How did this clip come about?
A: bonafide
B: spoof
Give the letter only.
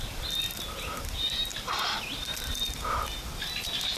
B